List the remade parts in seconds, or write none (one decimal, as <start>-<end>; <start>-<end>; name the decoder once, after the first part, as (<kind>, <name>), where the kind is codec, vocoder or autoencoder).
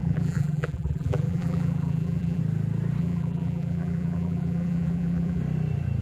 0.0-2.4 (vocoder, BigVGAN v2); 3.0-5.4